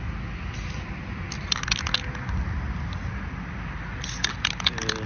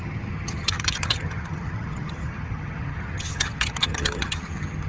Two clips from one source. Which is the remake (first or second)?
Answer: second